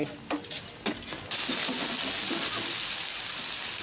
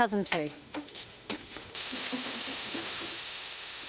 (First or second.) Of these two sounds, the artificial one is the second